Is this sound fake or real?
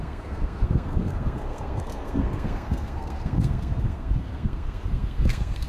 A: fake